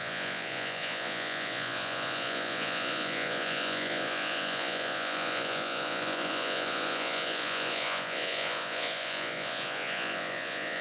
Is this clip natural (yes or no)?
no